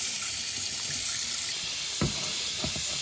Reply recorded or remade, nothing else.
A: recorded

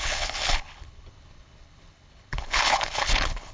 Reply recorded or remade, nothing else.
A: remade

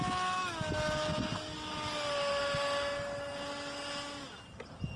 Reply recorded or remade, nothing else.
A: recorded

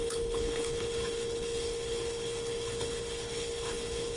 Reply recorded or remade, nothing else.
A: remade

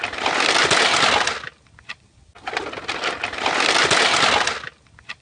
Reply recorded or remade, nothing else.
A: recorded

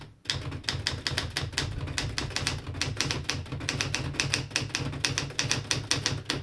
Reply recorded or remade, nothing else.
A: recorded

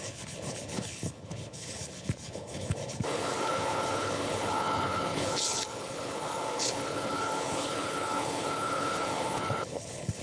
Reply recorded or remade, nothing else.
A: remade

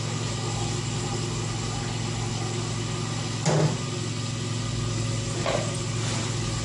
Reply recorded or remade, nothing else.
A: recorded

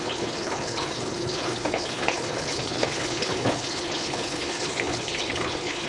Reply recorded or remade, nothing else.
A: remade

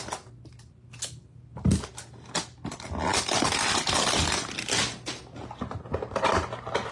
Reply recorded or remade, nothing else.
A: recorded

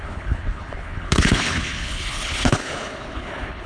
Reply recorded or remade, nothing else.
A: remade